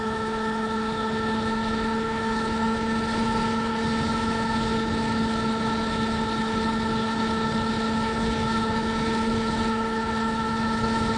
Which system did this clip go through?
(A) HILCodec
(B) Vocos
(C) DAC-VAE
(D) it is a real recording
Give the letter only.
A